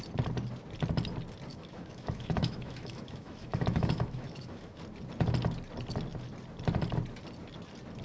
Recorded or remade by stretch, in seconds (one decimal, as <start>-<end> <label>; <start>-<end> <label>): 0.0-1.5 recorded; 1.5-4.8 remade; 4.8-8.0 recorded